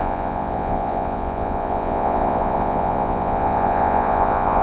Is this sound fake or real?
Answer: fake